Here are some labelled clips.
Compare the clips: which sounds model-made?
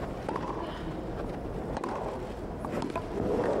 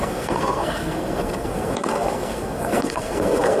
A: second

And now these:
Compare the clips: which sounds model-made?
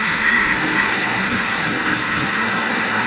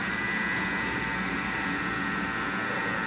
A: first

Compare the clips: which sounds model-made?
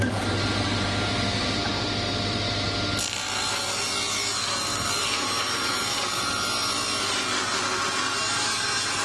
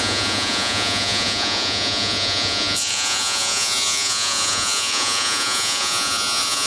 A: second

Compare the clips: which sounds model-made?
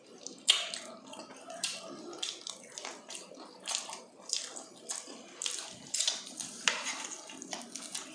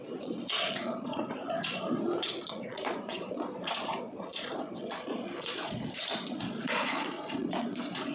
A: second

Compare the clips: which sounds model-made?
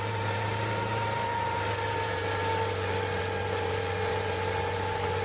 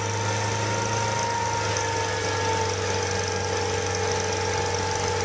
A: first